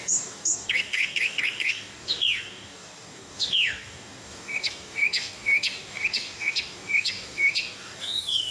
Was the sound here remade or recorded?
remade